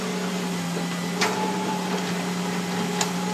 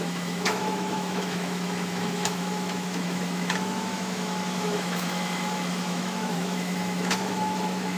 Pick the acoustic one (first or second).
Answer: first